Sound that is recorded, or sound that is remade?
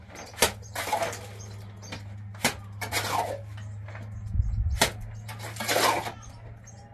recorded